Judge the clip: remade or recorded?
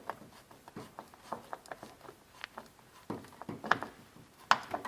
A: recorded